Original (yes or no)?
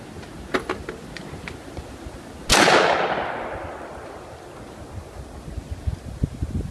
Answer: yes